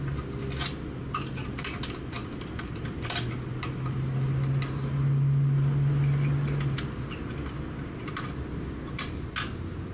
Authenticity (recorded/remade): recorded